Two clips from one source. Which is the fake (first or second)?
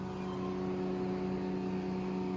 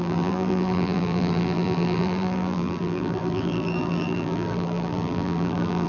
second